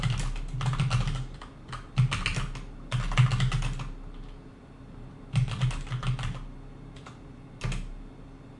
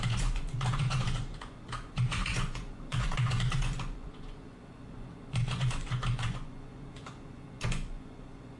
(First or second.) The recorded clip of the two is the first